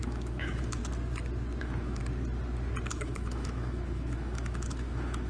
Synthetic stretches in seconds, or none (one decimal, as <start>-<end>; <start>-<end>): 0.0-0.8; 1.6-2.0; 2.9-5.3